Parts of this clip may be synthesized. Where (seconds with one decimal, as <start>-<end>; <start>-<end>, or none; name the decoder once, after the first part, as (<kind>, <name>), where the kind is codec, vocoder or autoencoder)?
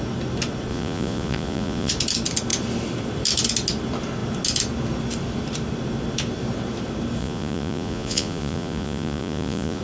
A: 0.7-1.9 (vocoder, Vocos); 7.2-9.8